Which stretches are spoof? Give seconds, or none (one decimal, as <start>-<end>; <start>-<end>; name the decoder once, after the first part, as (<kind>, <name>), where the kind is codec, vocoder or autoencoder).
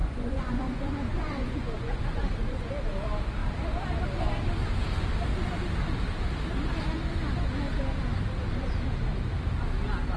0.0-2.7 (vocoder, Vocos); 6.9-7.5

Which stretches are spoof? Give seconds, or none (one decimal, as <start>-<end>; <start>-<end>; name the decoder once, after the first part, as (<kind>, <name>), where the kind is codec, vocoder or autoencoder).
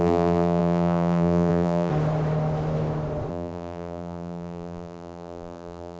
0.0-1.9 (vocoder, BigVGAN v2); 3.3-6.0